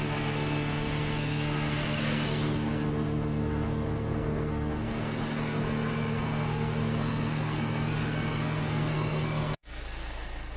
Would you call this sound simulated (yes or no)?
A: yes